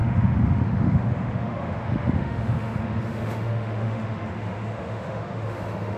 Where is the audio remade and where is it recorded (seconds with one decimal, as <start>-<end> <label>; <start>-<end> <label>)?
0.0-6.0 remade